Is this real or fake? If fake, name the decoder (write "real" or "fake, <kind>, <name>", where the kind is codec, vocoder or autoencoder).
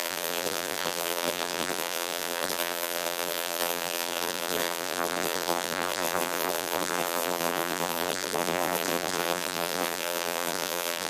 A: fake, vocoder, BigVGAN v2